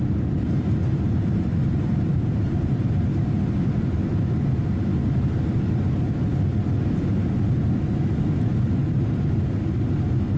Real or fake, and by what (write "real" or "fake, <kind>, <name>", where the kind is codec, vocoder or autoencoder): real